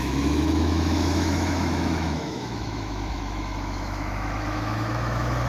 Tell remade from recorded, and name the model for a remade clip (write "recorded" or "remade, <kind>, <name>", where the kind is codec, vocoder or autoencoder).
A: remade, autoencoder, DAC-VAE